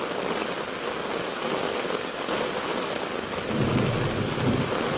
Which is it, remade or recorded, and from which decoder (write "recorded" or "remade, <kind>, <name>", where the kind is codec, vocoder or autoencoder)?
recorded